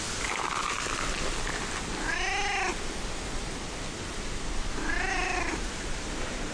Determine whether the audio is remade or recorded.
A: recorded